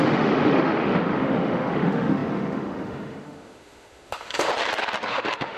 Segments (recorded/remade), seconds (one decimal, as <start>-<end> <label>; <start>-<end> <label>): 0.0-4.5 remade; 4.5-5.1 recorded; 5.1-5.6 remade